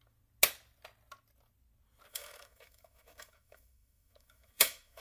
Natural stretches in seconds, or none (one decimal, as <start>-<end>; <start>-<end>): 0.0-2.1